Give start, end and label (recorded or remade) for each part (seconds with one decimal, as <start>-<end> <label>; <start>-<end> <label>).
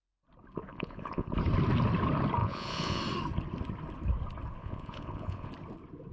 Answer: 0.0-0.7 recorded; 0.7-1.3 remade; 1.3-2.4 recorded; 2.4-3.0 remade; 3.0-4.6 recorded; 4.6-5.5 remade; 5.5-6.1 recorded